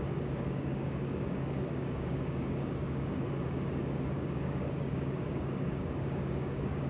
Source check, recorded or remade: remade